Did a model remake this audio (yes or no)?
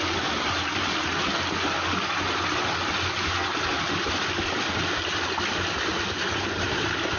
no